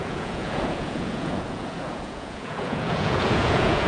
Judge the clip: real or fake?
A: fake